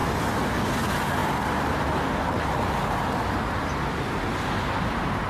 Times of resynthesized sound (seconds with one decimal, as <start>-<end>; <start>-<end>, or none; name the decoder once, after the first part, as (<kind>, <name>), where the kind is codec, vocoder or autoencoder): none